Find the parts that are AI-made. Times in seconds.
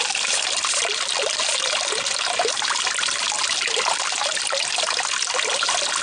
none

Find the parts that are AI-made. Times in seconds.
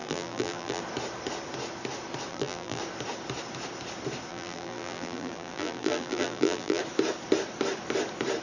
0.0-0.8 (vocoder, BigVGAN v2); 2.3-2.8; 4.3-6.8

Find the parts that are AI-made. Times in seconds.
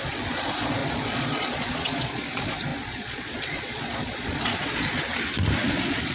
0.0-5.1 (vocoder, Vocos); 5.6-6.1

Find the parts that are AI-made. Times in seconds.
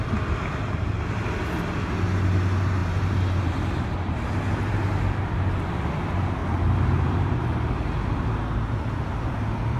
2.8-3.4 (vocoder, BigVGAN v2); 6.4-7.3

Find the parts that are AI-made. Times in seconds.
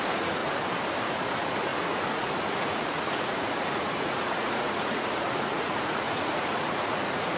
0.0-0.4 (vocoder, Vocos); 1.1-7.4